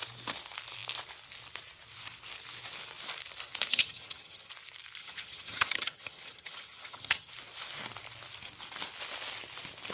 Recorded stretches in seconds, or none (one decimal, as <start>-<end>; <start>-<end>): 0.0-3.7; 4.5-5.0; 7.3-9.9